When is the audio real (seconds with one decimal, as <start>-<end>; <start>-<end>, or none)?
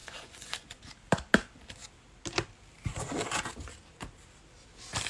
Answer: 0.8-5.1